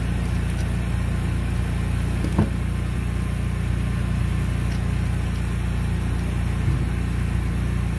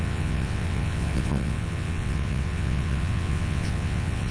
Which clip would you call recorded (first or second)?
first